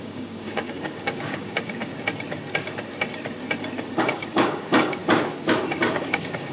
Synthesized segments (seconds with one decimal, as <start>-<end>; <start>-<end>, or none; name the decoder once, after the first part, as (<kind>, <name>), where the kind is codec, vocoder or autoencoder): 0.0-1.9 (codec, DAC); 4.0-5.0; 6.0-6.5